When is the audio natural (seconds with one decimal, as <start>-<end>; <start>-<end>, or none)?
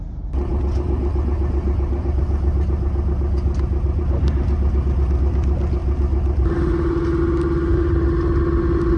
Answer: 0.0-9.0